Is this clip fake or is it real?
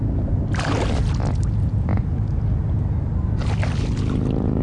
real